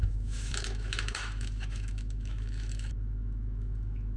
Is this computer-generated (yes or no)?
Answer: yes